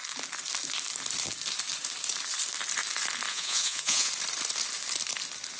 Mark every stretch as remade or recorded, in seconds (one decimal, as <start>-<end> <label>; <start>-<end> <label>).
0.0-3.3 recorded; 3.3-4.1 remade; 4.1-5.6 recorded